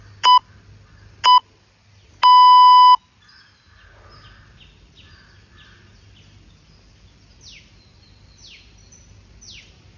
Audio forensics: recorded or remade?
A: recorded